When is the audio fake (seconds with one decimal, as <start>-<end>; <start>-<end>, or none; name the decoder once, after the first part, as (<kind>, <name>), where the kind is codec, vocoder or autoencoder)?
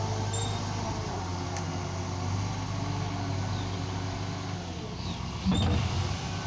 none